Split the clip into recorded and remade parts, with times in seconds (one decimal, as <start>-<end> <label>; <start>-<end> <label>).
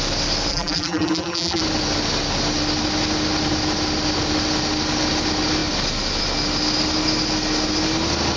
0.0-0.5 recorded; 0.5-1.6 remade; 1.6-8.4 recorded